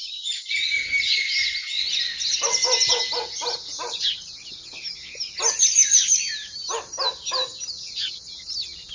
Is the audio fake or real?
real